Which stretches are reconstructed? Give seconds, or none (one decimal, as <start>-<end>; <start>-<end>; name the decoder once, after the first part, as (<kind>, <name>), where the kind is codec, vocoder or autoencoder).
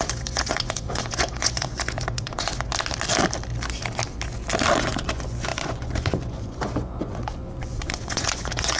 0.0-2.7 (vocoder, Vocos); 4.8-8.8